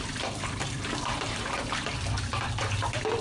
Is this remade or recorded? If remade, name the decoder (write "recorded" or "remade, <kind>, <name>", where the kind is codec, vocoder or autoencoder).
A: remade, vocoder, BigVGAN v2